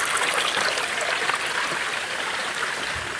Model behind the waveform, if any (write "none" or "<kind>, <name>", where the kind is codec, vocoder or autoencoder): none